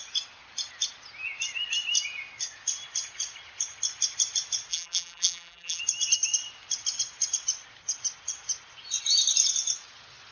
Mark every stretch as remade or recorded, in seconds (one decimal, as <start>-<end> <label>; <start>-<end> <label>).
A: 0.0-4.7 recorded; 4.7-5.8 remade; 5.8-10.3 recorded

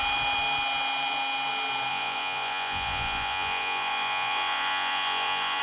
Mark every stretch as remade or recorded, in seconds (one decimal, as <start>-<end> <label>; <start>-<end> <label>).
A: 0.0-1.9 recorded; 1.9-5.6 remade

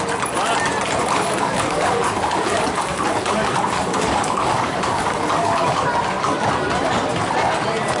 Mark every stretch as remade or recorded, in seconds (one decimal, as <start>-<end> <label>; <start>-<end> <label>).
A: 0.0-1.0 recorded; 1.0-5.8 remade; 5.8-8.0 recorded

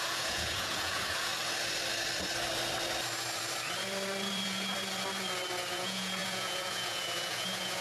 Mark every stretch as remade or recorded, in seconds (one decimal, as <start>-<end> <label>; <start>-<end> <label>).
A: 0.0-1.3 remade; 1.3-5.7 recorded; 5.7-7.8 remade

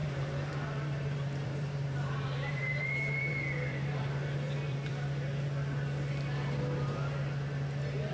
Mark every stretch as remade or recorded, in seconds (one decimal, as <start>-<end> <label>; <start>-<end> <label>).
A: 0.0-4.9 remade; 4.9-8.1 recorded

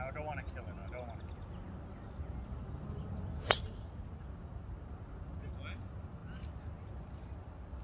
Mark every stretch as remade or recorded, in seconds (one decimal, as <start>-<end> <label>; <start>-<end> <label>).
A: 0.0-7.8 recorded